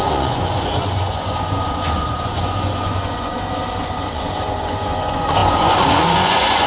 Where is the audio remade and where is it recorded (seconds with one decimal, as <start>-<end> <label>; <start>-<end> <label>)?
0.0-6.7 remade